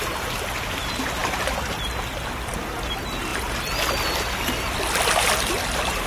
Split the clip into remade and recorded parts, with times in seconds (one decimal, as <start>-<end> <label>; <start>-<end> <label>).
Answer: 0.0-6.1 recorded